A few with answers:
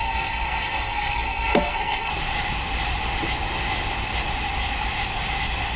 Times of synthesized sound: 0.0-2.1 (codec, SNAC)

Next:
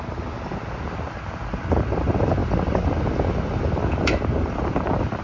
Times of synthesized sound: none